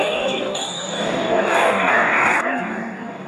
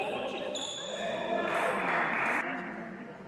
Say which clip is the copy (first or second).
first